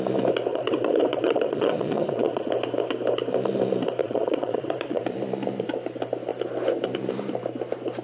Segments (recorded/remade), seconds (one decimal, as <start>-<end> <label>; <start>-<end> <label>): 0.0-0.5 recorded; 0.5-2.5 remade; 2.5-4.0 recorded; 4.0-5.0 remade; 5.0-8.0 recorded